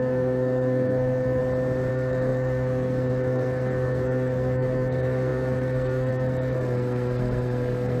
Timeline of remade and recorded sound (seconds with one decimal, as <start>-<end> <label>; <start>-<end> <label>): 0.0-1.4 remade; 1.4-1.9 recorded; 1.9-8.0 remade